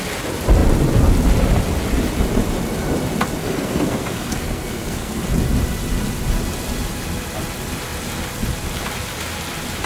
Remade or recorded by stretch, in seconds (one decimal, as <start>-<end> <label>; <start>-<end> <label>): 0.0-3.4 recorded; 3.4-5.2 remade; 5.2-9.9 recorded